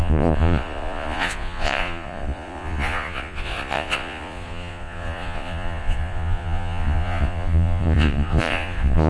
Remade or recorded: remade